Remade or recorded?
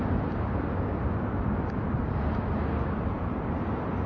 recorded